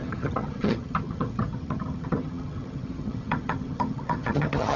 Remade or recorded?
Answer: remade